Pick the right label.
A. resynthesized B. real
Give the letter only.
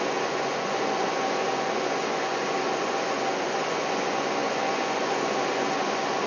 A